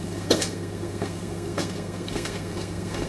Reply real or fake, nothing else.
fake